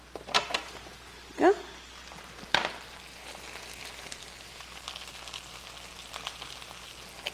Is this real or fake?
real